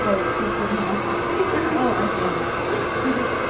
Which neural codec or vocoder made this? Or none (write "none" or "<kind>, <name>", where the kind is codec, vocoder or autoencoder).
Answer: none